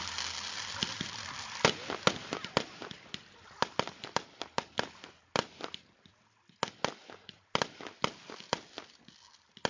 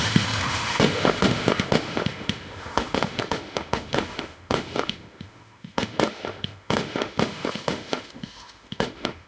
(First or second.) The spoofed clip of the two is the second